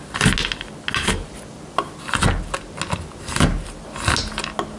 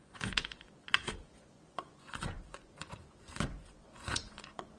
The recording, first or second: first